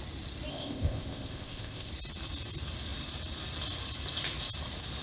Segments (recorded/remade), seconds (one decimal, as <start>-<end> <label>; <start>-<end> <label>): 0.0-0.5 recorded; 0.5-1.9 remade; 1.9-5.0 recorded